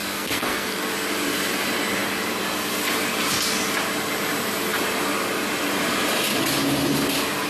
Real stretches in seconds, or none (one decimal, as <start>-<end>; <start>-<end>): 0.9-7.5

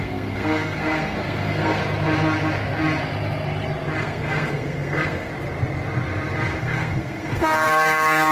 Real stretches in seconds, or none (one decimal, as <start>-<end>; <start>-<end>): 1.8-4.0; 5.3-6.6

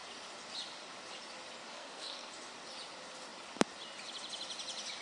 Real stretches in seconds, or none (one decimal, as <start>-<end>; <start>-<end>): 0.0-1.7; 2.3-5.0

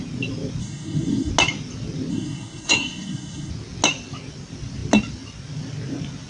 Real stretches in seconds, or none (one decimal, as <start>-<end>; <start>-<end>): 0.0-0.6; 1.3-2.1; 3.5-6.3

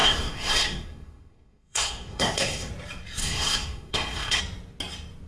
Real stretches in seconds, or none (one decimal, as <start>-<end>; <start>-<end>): 2.7-3.2; 4.4-5.3